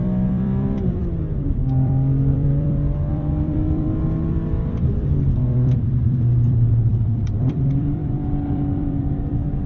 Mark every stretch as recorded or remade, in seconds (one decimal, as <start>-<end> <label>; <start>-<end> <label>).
0.0-9.7 remade